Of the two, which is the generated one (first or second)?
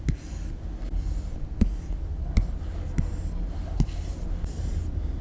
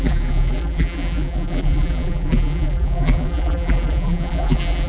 second